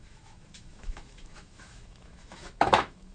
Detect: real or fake fake